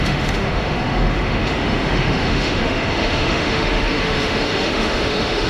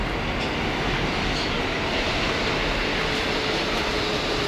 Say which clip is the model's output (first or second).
first